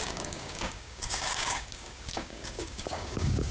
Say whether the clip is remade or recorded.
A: remade